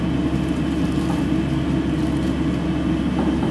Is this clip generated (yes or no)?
no